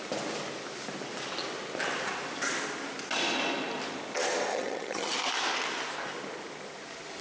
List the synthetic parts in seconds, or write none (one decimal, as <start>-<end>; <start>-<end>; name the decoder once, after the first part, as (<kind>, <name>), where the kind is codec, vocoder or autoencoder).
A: 4.5-5.1 (vocoder, HiFi-GAN)